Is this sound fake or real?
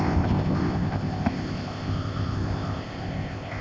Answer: fake